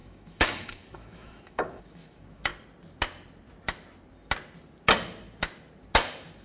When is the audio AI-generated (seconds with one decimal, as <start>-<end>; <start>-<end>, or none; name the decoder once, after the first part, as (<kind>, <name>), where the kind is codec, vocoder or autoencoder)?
0.0-2.5 (autoencoder, DAC-VAE)